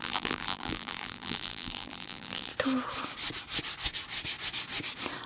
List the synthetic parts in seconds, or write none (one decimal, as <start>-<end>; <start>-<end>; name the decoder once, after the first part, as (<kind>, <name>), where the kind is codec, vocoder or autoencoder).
0.0-2.5 (vocoder, BigVGAN v2)